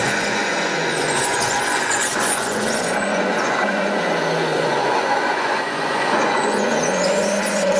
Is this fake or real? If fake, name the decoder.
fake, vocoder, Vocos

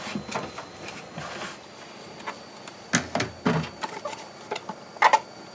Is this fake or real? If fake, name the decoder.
real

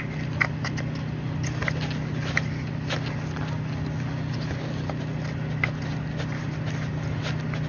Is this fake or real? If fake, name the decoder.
real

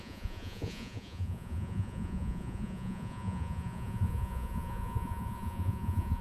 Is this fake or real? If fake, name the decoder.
fake, vocoder, Vocos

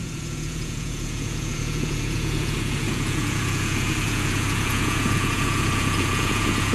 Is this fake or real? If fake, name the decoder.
fake, vocoder, Vocos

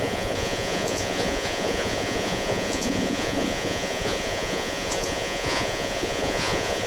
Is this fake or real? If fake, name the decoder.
fake, vocoder, Vocos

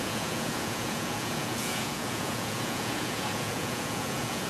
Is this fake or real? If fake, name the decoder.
fake, vocoder, Vocos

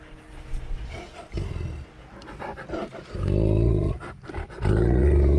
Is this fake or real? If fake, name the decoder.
real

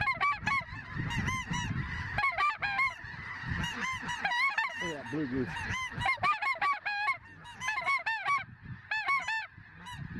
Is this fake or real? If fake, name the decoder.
real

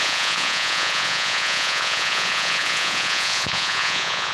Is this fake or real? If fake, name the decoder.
fake, vocoder, Vocos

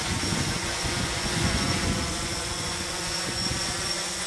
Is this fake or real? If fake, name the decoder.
fake, vocoder, Vocos